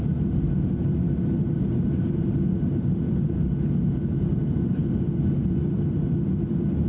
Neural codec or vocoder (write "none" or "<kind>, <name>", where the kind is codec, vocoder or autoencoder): none